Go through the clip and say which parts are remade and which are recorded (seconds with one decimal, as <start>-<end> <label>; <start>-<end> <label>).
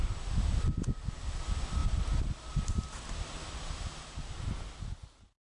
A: 0.0-5.5 recorded